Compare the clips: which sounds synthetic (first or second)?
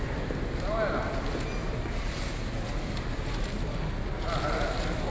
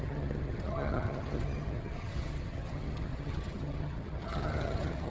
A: second